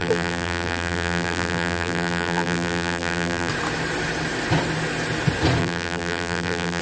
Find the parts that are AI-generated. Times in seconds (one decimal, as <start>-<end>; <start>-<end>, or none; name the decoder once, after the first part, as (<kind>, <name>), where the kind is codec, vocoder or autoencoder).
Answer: 0.0-3.5 (vocoder, BigVGAN v2); 5.6-6.8